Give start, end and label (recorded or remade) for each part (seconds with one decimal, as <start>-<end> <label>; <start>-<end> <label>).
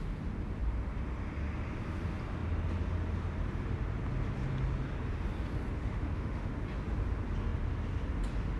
0.0-5.8 recorded; 5.8-6.5 remade; 6.5-8.6 recorded